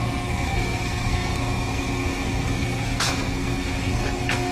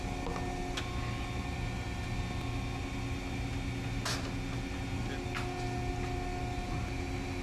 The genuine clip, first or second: second